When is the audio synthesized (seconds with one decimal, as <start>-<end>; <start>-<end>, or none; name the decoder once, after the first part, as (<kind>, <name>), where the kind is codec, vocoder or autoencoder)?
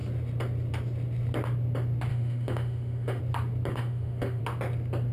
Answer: 2.1-3.2 (autoencoder, DAC-VAE); 3.7-4.4